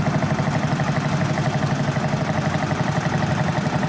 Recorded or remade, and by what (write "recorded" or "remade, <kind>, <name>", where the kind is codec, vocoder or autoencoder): recorded